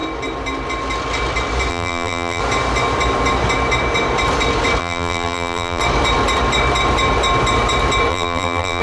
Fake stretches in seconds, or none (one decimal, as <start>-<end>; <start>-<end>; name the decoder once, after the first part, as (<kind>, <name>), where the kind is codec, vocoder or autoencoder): 1.7-2.4 (vocoder, BigVGAN v2); 4.8-5.8; 8.1-8.8